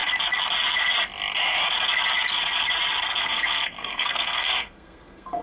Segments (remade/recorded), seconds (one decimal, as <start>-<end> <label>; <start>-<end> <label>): 0.0-3.2 recorded; 3.2-5.4 remade